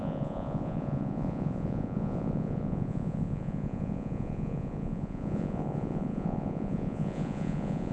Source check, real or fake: fake